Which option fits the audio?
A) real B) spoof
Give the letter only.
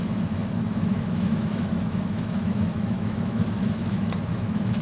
B